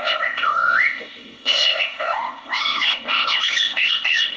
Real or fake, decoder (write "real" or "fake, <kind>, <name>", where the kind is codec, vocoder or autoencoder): fake, codec, ZipCodec